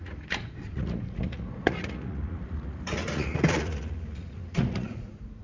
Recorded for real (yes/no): no